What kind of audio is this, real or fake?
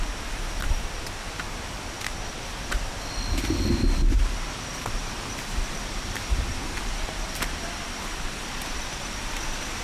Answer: real